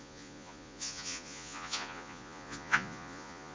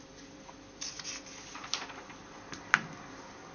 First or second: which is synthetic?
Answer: first